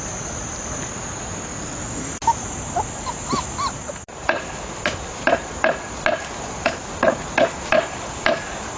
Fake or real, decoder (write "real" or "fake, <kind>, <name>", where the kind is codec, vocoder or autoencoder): real